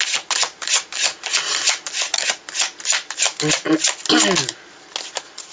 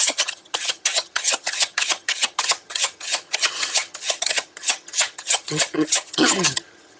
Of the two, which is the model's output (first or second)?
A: second